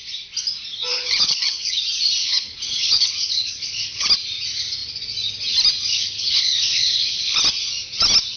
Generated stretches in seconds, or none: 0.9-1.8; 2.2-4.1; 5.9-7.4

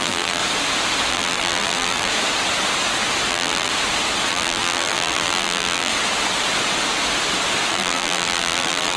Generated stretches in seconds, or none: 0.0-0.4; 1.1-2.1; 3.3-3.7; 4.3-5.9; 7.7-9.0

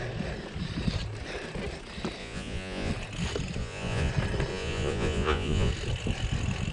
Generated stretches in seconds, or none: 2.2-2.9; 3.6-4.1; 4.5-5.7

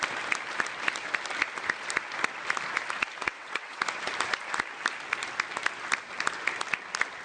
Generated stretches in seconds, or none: 3.3-3.8

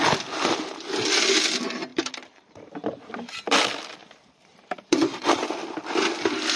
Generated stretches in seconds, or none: 1.9-3.1; 4.0-5.3